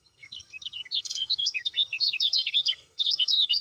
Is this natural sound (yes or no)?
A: no